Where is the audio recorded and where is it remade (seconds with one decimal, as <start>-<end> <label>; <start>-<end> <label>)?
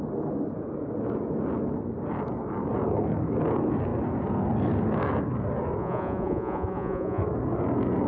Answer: 0.0-5.8 recorded; 5.8-7.2 remade; 7.2-8.1 recorded